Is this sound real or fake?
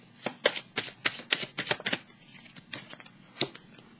real